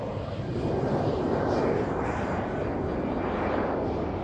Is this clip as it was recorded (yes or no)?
yes